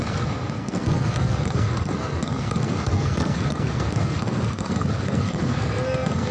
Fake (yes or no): yes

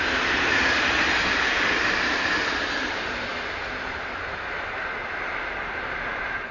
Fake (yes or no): yes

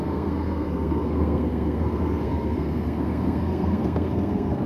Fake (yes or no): yes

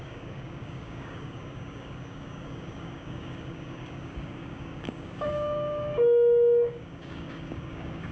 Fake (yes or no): yes